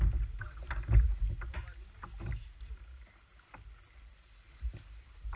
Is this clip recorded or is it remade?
recorded